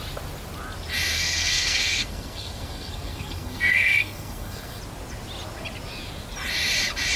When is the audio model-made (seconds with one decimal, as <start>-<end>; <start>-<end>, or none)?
1.1-4.8